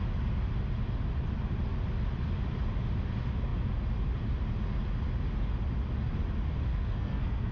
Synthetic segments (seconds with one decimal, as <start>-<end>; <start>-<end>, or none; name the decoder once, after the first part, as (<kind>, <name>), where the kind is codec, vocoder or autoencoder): 6.7-7.5 (codec, SNAC)